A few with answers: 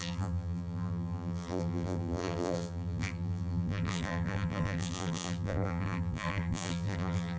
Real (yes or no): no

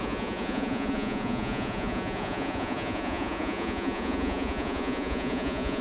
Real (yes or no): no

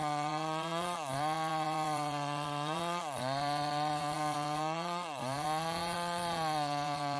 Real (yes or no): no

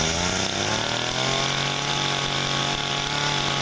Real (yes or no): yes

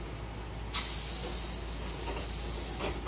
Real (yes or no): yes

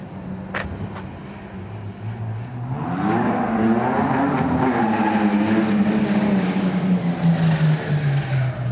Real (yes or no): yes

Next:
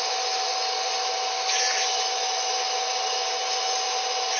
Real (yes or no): yes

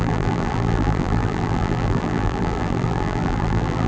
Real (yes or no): no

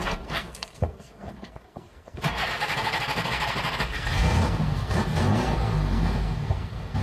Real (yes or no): no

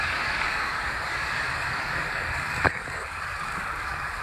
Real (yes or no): no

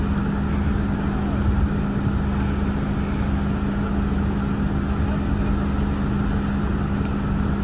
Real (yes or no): yes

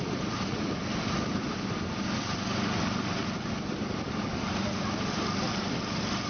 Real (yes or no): yes